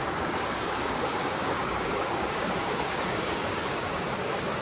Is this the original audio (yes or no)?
no